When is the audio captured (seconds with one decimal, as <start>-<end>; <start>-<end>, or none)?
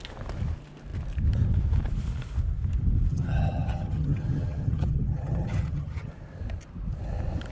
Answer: 0.0-3.1; 6.1-7.5